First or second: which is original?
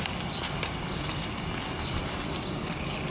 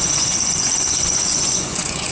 first